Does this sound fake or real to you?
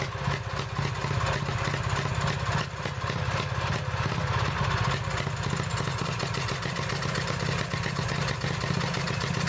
real